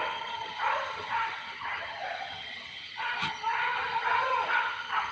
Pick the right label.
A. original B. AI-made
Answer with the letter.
B